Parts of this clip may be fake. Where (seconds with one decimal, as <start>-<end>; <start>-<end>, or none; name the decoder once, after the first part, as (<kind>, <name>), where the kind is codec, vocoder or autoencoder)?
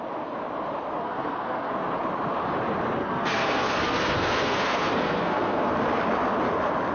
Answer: 1.0-1.7 (codec, SNAC); 3.0-5.7